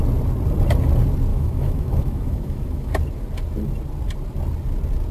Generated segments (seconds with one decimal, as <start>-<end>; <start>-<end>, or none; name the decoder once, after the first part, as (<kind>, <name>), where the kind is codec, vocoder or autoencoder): 1.3-2.9 (autoencoder, DAC-VAE)